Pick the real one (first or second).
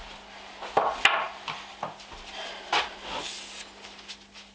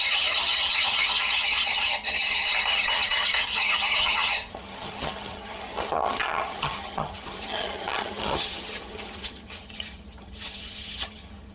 first